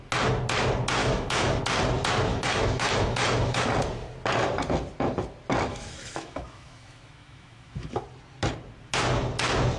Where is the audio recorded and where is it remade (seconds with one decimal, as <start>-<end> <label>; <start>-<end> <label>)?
0.0-1.0 recorded; 1.0-1.6 remade; 1.6-2.3 recorded; 2.3-3.7 remade; 3.7-5.7 recorded; 5.7-8.0 remade; 8.0-9.8 recorded